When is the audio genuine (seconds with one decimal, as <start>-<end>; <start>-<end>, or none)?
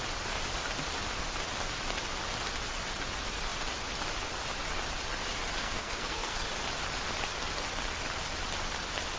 0.0-5.6; 6.5-9.2